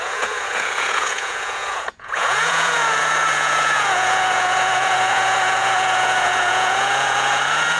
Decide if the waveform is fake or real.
fake